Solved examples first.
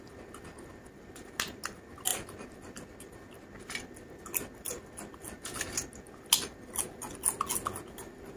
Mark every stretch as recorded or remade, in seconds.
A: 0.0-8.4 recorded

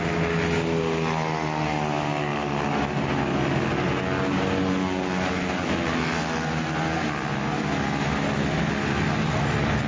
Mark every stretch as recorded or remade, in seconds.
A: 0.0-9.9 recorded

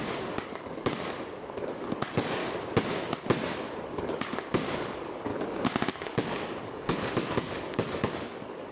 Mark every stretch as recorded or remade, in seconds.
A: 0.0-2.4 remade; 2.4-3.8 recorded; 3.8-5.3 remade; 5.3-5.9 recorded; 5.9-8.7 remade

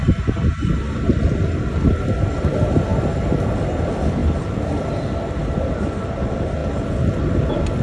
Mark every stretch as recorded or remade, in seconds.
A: 0.0-1.1 recorded; 1.1-2.9 remade; 2.9-3.6 recorded; 3.6-6.6 remade; 6.6-7.8 recorded

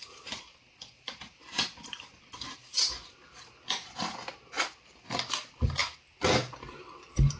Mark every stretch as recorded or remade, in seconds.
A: 0.0-1.4 recorded; 1.4-5.8 remade; 5.8-7.4 recorded

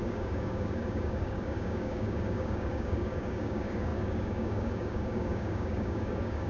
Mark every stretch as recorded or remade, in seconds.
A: 0.0-6.5 remade

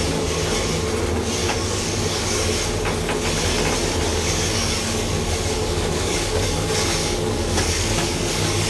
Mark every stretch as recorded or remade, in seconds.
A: 0.0-1.4 recorded; 1.4-2.5 remade; 2.5-4.1 recorded; 4.1-8.7 remade